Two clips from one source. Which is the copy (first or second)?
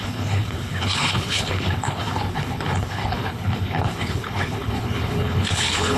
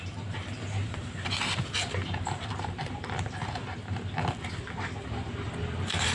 first